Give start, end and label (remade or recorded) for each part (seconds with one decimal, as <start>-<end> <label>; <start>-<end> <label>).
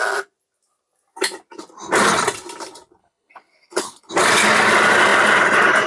0.0-3.0 recorded; 3.0-4.1 remade; 4.1-5.9 recorded